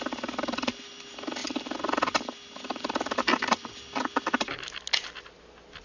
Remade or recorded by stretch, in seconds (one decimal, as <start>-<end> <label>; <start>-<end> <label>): 0.0-5.8 recorded